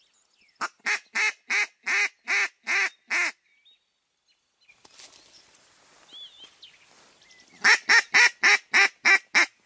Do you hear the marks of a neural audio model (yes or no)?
no